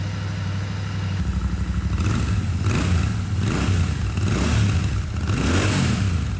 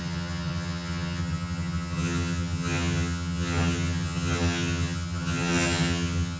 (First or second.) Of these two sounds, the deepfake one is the second